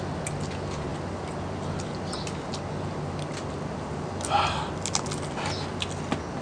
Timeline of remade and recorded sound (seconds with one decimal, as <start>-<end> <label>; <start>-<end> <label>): 0.0-6.4 recorded